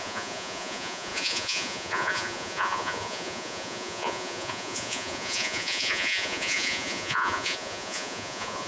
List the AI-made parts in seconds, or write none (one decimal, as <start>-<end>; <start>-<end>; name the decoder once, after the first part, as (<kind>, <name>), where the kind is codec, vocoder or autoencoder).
0.0-8.7 (vocoder, Vocos)